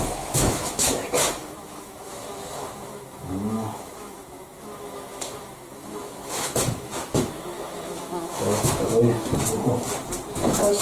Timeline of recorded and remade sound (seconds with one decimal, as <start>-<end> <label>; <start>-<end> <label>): 0.0-9.3 remade; 9.3-10.3 recorded; 10.3-10.8 remade

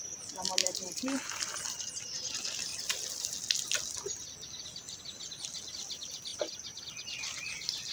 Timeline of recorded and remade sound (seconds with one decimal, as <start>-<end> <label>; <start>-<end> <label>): 0.0-0.6 recorded; 0.6-1.4 remade; 1.4-6.3 recorded; 6.3-6.8 remade; 6.8-7.9 recorded

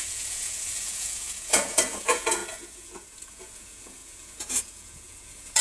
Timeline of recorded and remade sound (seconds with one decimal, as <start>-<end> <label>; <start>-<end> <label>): 0.0-5.6 remade